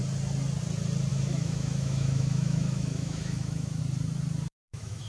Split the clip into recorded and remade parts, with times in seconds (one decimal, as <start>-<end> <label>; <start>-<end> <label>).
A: 0.0-1.1 recorded; 1.1-3.8 remade; 3.8-4.5 recorded; 4.5-5.1 remade